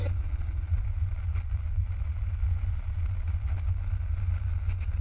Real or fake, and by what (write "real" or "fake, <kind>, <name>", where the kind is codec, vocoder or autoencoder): real